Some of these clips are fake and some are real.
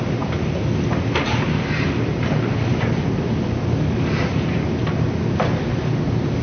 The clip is real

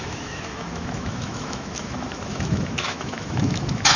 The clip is fake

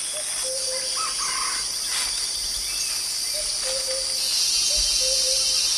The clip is real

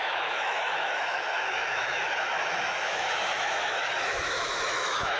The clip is fake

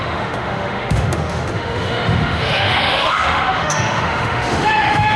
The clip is fake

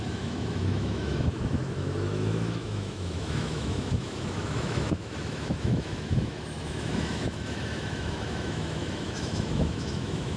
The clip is fake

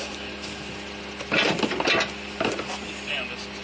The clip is real